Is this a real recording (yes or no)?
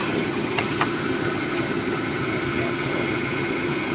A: no